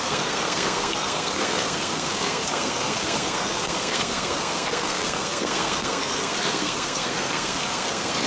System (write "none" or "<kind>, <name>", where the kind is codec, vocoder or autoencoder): codec, SNAC